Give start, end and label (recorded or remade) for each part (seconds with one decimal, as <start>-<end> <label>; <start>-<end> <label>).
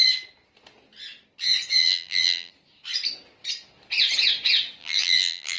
0.0-1.8 recorded; 1.8-2.5 remade; 2.5-4.8 recorded; 4.8-5.6 remade